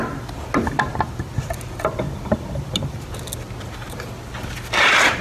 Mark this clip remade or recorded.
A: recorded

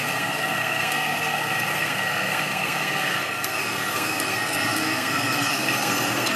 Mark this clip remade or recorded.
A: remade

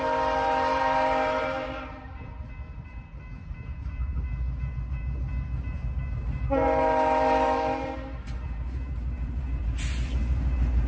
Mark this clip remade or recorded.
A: remade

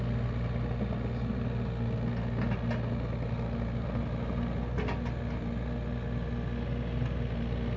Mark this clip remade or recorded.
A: recorded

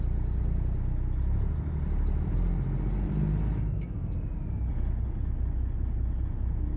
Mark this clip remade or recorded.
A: recorded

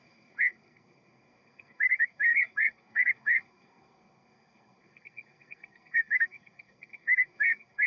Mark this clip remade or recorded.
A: remade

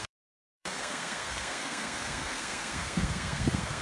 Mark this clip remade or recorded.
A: remade